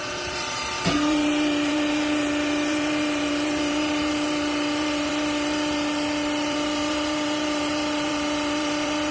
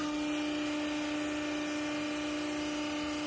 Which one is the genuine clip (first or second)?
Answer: second